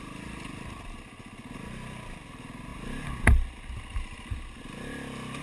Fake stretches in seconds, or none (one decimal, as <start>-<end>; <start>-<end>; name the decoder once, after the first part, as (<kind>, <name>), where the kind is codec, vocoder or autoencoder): none